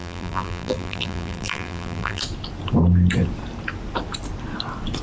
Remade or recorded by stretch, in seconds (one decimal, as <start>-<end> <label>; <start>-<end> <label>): 0.0-2.2 remade; 2.2-5.0 recorded

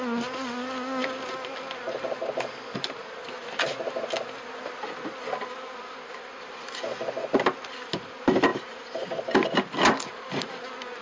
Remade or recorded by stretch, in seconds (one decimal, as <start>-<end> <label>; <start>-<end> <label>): 0.0-11.0 recorded

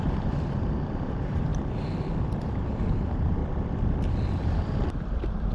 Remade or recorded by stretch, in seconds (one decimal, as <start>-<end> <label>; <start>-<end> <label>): 0.0-1.5 remade; 1.5-2.3 recorded; 2.3-3.4 remade; 3.4-4.3 recorded; 4.3-5.5 remade

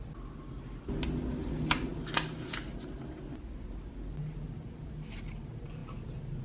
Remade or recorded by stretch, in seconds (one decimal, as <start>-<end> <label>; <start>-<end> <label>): 0.0-6.4 recorded

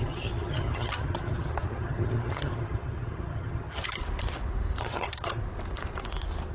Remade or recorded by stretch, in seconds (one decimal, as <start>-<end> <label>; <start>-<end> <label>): 0.0-4.0 remade; 4.0-4.8 recorded; 4.8-5.4 remade; 5.4-6.5 recorded

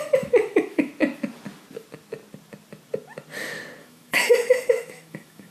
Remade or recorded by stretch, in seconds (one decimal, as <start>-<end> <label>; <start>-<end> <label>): 0.0-0.9 remade; 0.9-3.8 recorded; 3.8-5.5 remade

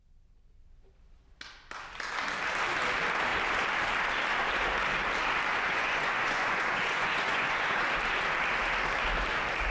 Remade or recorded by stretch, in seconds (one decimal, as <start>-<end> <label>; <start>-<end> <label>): 0.0-5.5 recorded; 5.5-7.9 remade; 7.9-9.7 recorded